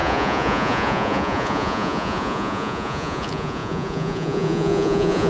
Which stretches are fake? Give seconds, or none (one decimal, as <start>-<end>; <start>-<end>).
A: 0.0-5.3